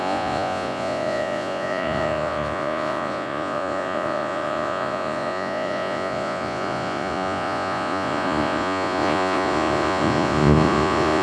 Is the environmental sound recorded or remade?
remade